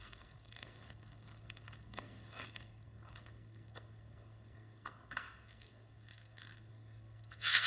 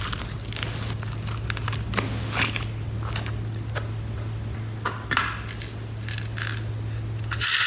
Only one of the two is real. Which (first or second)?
second